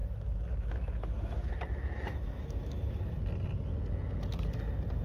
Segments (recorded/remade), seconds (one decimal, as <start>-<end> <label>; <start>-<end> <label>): 0.0-3.0 remade; 3.0-5.0 recorded